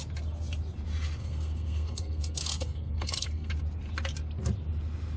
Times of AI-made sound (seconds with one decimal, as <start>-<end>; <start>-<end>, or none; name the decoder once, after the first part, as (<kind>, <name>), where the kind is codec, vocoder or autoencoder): 1.2-3.5 (codec, SNAC)